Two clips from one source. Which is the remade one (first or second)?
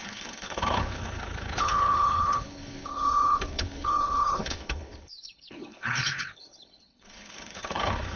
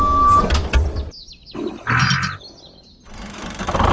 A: first